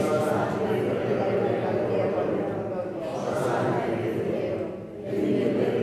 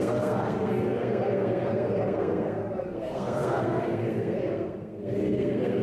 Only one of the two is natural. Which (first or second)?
first